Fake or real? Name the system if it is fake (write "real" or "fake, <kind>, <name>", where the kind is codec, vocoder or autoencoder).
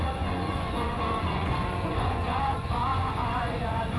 fake, vocoder, Vocos